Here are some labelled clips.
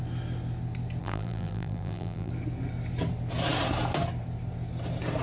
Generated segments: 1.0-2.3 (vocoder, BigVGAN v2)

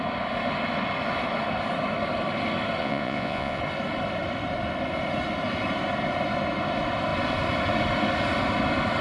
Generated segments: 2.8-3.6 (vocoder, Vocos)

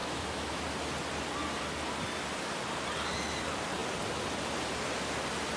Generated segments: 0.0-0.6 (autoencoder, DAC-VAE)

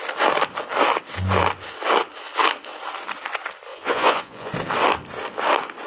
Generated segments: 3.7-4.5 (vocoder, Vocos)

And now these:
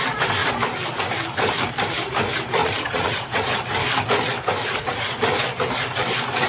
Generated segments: 2.6-3.6 (vocoder, Vocos); 4.6-5.2

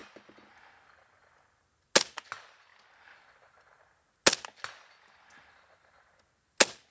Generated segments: none

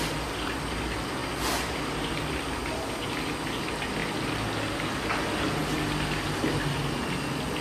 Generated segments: none

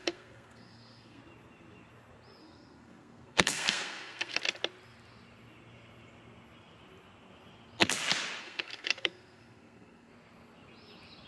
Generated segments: 0.0-1.2 (codec, SNAC); 2.4-4.4; 8.4-10.1